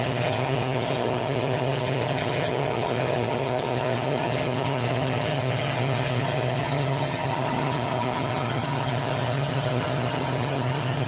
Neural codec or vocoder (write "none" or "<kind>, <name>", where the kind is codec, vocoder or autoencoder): vocoder, HiFi-GAN